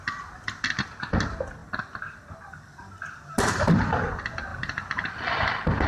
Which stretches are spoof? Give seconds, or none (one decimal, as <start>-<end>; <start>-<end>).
none